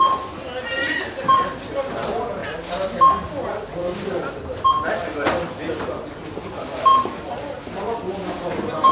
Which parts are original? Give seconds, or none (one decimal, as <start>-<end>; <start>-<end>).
0.0-8.9